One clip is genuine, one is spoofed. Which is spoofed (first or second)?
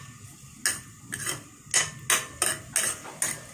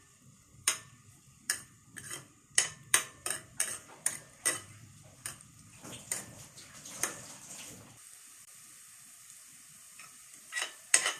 second